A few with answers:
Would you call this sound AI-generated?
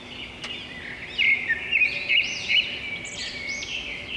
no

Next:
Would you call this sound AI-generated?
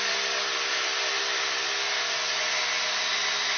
no